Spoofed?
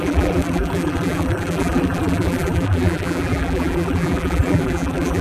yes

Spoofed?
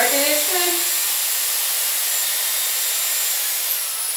no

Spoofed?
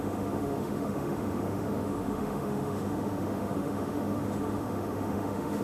yes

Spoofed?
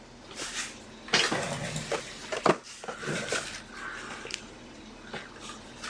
no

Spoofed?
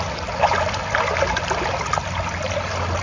no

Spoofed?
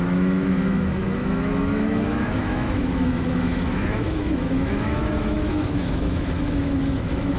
yes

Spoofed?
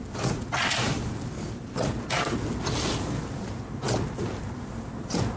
no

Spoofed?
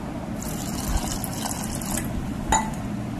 no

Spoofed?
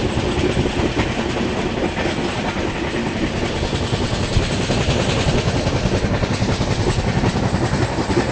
no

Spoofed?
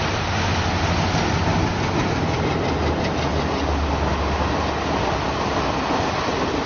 no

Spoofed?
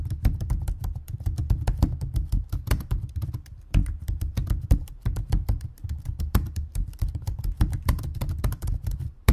yes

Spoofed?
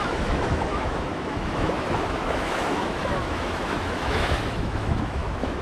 yes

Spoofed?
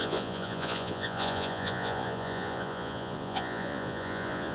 yes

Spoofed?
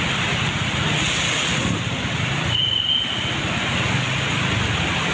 no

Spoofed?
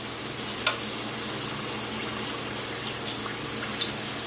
no